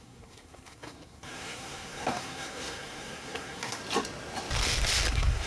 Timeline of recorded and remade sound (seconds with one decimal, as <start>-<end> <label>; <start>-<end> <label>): 0.0-3.8 remade; 3.8-5.1 recorded; 5.1-5.5 remade